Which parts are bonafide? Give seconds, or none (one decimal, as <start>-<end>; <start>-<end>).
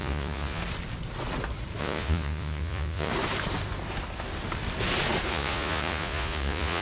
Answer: 0.6-1.8; 3.1-5.3